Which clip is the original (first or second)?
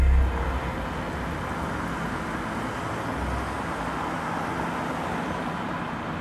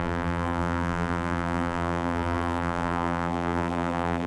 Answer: first